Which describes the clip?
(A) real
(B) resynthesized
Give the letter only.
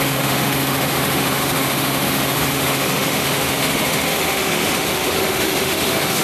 B